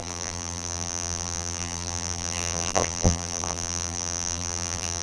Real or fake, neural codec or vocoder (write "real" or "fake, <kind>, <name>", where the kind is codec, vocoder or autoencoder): fake, vocoder, BigVGAN v2